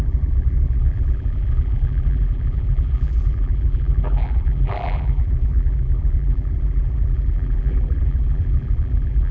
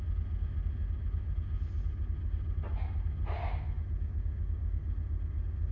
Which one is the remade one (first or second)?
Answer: first